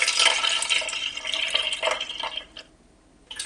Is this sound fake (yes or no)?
no